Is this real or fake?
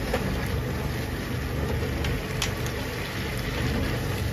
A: real